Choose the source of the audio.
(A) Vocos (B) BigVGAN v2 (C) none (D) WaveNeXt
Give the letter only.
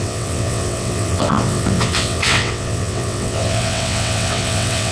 D